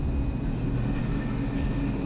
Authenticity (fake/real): real